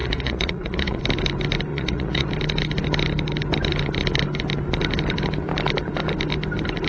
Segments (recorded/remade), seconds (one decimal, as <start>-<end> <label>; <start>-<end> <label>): 0.0-1.0 remade; 1.0-1.7 recorded; 1.7-2.3 remade; 2.3-6.9 recorded